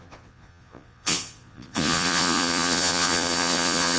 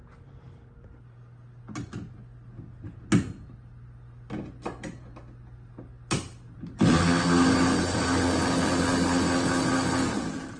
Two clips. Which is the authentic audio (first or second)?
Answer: second